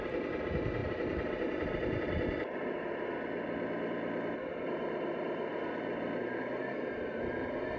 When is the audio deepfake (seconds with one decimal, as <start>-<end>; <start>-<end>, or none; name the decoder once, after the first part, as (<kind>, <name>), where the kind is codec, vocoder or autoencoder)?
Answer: 0.8-2.1 (vocoder, BigVGAN v2)